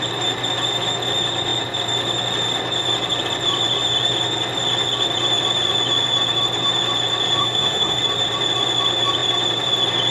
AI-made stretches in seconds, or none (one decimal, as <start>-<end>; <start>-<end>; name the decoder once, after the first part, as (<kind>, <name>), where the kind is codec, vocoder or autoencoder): 7.4-8.0 (autoencoder, DAC-VAE)